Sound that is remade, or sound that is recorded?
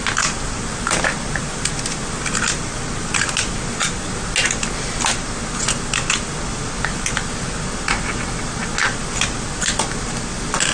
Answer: recorded